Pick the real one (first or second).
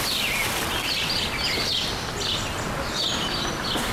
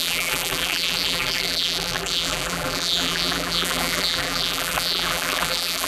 first